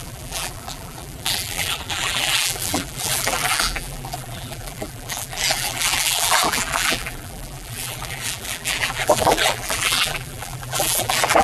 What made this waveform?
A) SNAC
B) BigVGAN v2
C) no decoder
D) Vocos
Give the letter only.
B